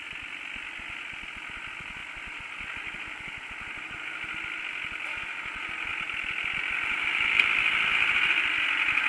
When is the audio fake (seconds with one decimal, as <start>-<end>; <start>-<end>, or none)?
2.0-4.6; 5.9-9.1